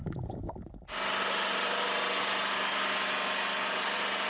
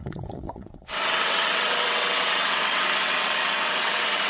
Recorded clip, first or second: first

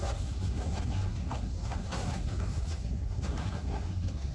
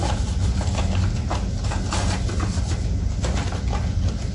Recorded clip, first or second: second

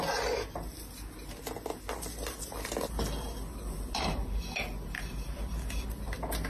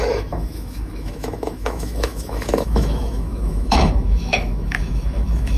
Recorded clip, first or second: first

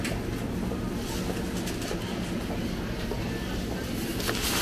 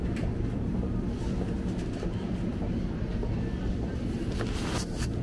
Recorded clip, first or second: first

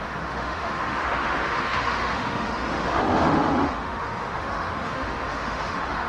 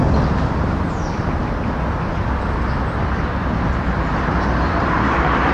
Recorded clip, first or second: second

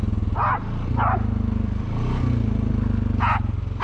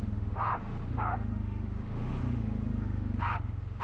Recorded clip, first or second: first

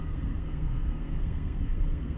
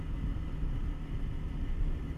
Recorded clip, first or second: second